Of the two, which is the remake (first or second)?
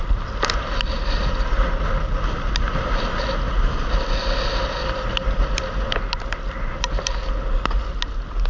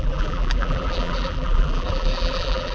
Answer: second